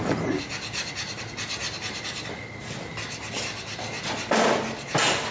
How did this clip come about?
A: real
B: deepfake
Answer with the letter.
A